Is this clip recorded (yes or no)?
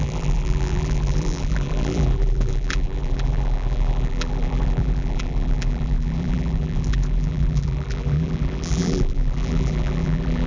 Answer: no